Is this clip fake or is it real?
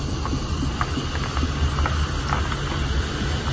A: real